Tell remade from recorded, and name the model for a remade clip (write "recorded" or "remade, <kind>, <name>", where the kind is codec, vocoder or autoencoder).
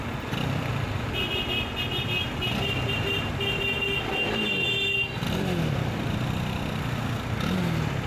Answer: recorded